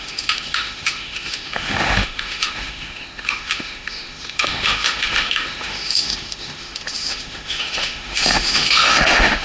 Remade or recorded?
remade